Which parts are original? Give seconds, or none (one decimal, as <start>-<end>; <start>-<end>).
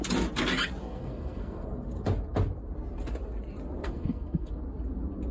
0.0-0.8; 1.7-3.8; 4.5-5.3